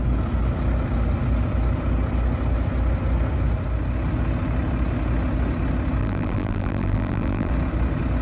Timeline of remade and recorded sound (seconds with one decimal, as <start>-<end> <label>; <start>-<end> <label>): 0.0-6.0 recorded; 6.0-7.5 remade; 7.5-8.2 recorded